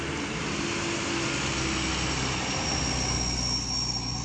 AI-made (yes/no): no